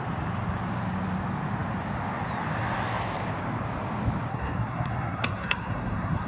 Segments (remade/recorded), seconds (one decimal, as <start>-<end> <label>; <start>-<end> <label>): 0.0-4.3 recorded; 4.3-6.3 remade